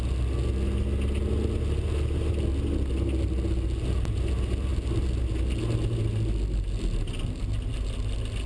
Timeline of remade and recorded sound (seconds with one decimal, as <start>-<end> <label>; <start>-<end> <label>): 0.0-8.5 recorded